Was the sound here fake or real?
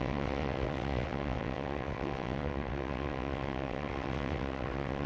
fake